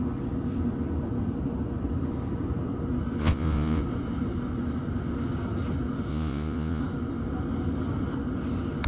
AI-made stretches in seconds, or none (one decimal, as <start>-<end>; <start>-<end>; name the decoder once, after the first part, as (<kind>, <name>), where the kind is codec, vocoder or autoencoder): 3.2-3.8 (vocoder, Vocos); 6.1-6.8